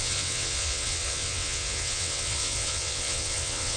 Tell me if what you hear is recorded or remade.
remade